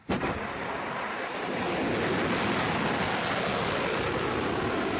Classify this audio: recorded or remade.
recorded